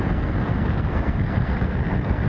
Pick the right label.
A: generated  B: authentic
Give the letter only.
A